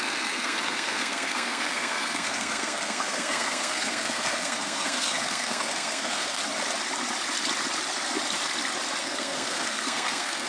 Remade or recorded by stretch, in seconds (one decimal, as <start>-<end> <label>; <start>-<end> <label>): 0.0-6.4 remade; 6.4-9.0 recorded; 9.0-10.5 remade